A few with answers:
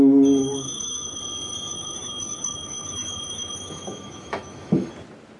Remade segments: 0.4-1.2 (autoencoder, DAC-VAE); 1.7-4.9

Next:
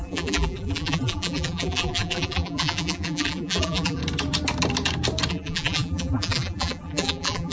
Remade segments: 0.0-4.0 (vocoder, BigVGAN v2); 5.3-7.5

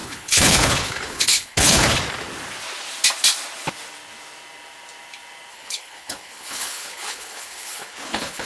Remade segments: 0.0-2.0 (codec, HILCodec); 5.5-8.5

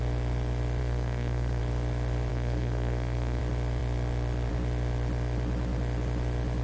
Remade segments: 0.8-1.6 (codec, SNAC); 2.3-3.4

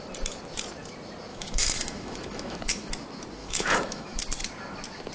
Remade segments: 1.3-2.9 (autoencoder, DAC-VAE); 3.4-4.2

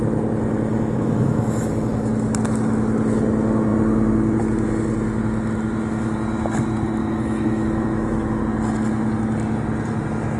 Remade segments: 0.7-2.1 (autoencoder, DAC-VAE); 7.0-8.4

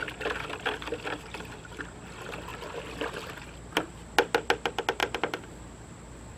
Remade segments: none